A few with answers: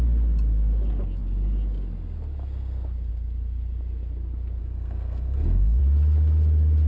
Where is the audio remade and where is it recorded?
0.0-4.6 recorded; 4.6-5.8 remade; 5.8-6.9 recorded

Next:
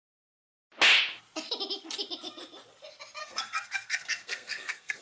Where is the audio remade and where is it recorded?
0.0-3.2 recorded; 3.2-5.0 remade

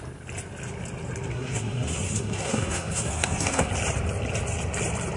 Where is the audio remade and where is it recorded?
0.0-1.3 recorded; 1.3-3.7 remade; 3.7-5.2 recorded

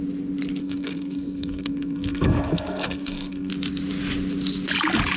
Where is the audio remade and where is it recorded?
0.0-0.6 recorded; 0.6-3.5 remade; 3.5-5.2 recorded

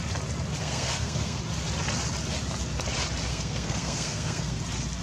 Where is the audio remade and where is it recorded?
0.0-0.6 recorded; 0.6-1.4 remade; 1.4-3.3 recorded; 3.3-4.6 remade; 4.6-5.0 recorded